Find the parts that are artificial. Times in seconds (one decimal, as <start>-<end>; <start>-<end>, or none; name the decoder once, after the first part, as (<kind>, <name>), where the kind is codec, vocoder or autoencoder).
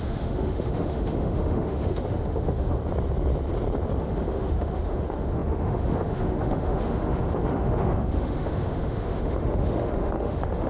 0.0-2.8 (autoencoder, DAC-VAE); 4.0-10.7